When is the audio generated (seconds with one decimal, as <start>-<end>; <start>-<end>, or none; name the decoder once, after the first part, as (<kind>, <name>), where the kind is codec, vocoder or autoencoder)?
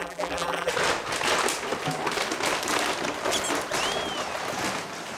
0.0-0.7 (vocoder, BigVGAN v2)